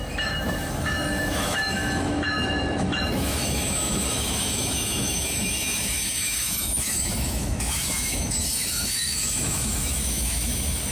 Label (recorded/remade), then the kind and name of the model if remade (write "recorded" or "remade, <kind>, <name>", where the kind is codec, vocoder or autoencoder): remade, autoencoder, DAC-VAE